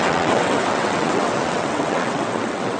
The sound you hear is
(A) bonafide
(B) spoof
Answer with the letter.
B